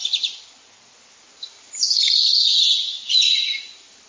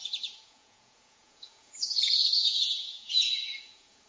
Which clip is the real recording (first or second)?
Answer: first